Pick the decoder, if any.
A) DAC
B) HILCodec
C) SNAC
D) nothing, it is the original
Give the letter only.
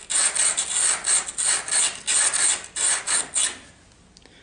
D